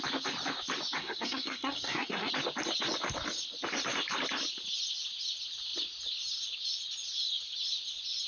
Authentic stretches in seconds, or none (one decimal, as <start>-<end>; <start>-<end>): 0.0-1.0; 2.3-8.3